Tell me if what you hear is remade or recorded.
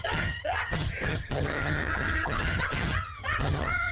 remade